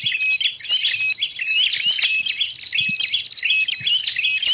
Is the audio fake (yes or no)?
no